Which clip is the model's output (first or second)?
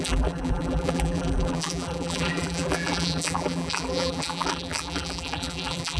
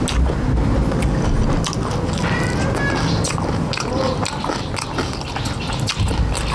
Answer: first